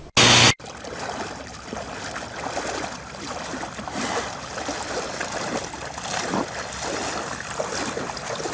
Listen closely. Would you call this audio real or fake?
real